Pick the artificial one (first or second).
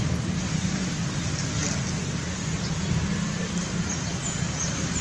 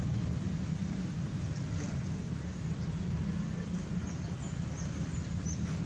second